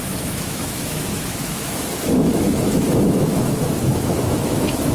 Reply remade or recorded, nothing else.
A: remade